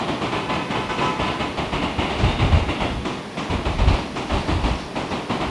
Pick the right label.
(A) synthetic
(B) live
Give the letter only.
B